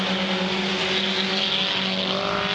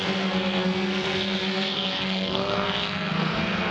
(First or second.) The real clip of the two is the first